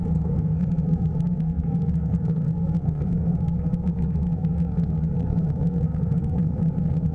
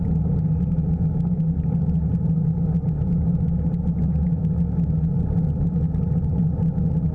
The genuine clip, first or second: second